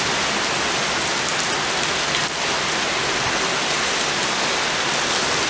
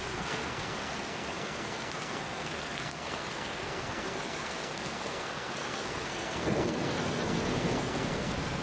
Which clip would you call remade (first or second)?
second